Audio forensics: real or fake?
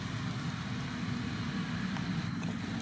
real